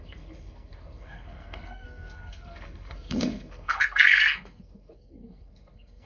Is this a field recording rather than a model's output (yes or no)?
no